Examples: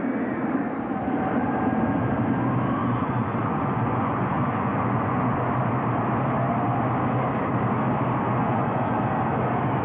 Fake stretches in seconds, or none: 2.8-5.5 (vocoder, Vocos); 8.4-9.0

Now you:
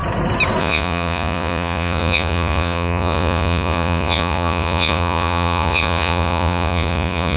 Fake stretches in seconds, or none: 0.6-7.4 (vocoder, Vocos)

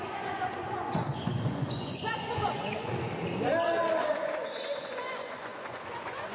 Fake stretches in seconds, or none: 0.0-2.9 (vocoder, Vocos); 4.1-6.3

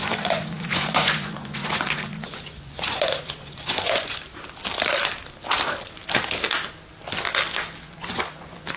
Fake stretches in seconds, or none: 0.0-4.3 (vocoder, Vocos); 7.8-8.8

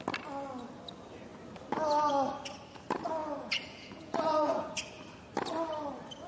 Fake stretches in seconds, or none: 3.2-4.7 (vocoder, Vocos)

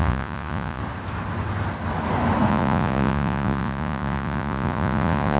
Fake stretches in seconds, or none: 0.0-0.8 (vocoder, Vocos); 2.5-5.4

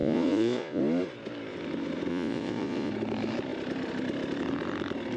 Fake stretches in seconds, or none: 0.0-0.8 (vocoder, Vocos); 2.1-2.9

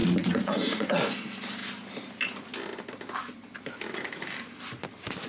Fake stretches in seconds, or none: 0.0-1.0 (vocoder, Vocos)